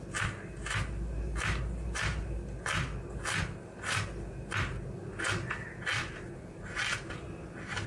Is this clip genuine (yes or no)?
yes